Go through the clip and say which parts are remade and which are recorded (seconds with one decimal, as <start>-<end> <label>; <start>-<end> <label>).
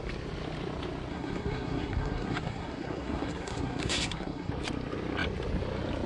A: 0.0-1.1 recorded; 1.1-4.5 remade; 4.5-6.1 recorded